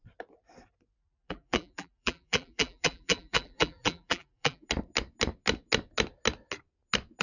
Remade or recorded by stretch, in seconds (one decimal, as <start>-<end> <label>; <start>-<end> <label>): 0.0-1.0 recorded; 1.0-4.7 remade; 4.7-7.2 recorded